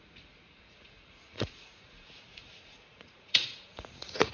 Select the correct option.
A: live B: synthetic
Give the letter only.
B